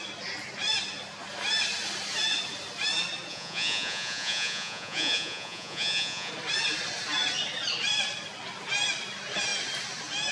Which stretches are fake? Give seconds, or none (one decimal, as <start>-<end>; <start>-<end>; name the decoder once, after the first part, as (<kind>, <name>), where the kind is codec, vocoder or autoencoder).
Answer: 3.3-6.3 (vocoder, Vocos)